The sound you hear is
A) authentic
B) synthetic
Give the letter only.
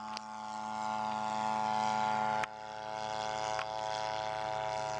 A